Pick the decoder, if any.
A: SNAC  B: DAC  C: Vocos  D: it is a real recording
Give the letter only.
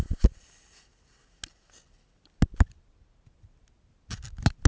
D